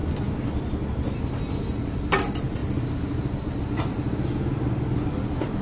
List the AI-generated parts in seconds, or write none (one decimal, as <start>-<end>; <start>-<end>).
none